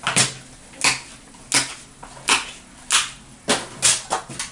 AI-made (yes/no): no